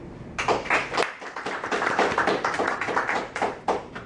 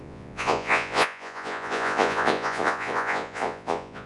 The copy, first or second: second